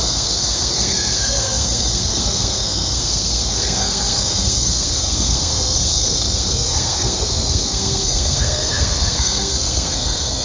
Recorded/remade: remade